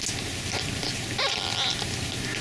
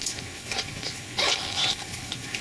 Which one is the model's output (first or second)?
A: second